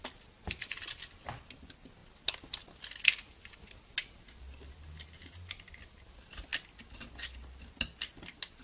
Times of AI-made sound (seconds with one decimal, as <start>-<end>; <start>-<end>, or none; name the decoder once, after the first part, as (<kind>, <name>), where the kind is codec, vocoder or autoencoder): none